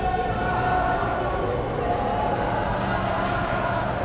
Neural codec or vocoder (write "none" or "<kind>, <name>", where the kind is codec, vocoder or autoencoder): none